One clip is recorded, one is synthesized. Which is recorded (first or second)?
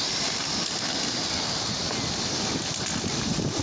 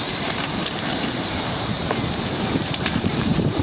first